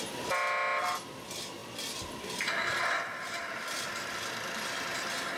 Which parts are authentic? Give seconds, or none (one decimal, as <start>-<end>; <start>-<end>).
0.0-5.4